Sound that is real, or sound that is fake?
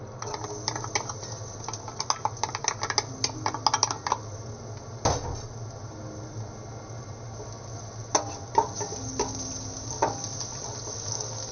real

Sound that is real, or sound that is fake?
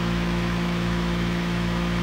fake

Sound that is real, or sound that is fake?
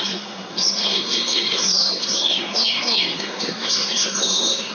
fake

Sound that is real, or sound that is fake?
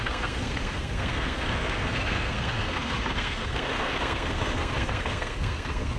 fake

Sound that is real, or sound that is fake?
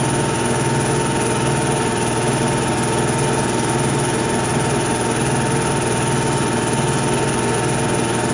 real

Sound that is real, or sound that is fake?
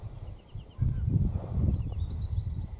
real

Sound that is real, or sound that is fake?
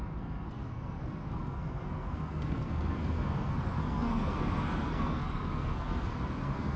fake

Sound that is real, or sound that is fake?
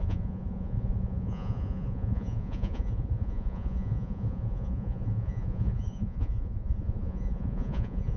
fake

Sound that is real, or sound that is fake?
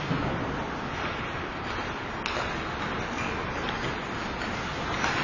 real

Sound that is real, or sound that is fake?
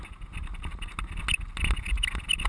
real